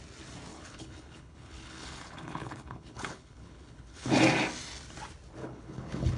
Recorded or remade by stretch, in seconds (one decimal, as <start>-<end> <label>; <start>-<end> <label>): 0.0-0.5 recorded; 0.5-4.2 remade; 4.2-5.4 recorded; 5.4-6.2 remade